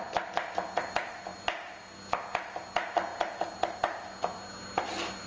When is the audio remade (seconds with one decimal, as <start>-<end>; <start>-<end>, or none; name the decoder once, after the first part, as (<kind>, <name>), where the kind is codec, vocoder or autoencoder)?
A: none